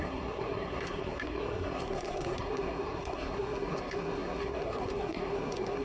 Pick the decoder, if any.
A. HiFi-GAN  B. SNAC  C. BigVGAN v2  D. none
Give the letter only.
B